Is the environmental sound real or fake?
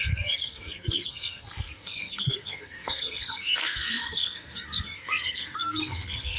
fake